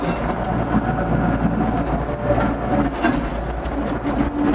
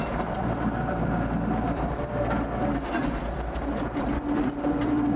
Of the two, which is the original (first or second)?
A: first